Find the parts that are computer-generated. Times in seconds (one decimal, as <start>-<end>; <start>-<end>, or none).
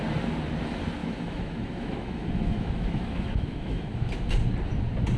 1.0-4.1